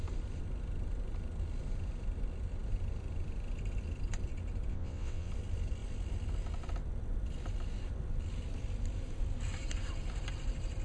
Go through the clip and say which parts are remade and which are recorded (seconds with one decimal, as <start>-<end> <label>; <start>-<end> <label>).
0.0-4.7 recorded; 4.7-5.3 remade; 5.3-10.8 recorded